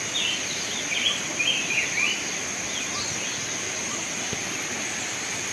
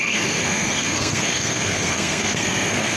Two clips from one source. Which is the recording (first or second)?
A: first